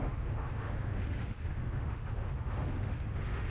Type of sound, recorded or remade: remade